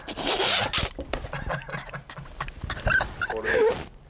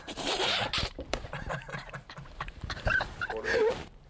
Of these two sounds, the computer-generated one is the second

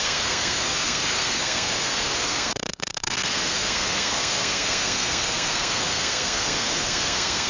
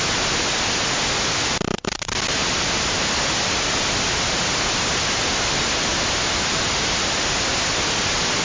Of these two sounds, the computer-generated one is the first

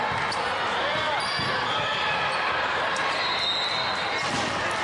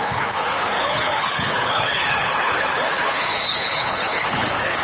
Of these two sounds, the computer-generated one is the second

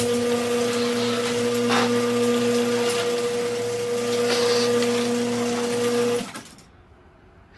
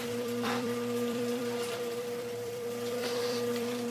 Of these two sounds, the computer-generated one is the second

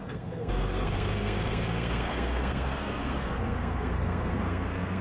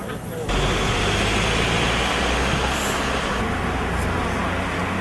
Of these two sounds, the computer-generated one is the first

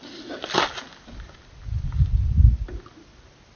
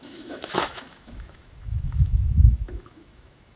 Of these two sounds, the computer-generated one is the second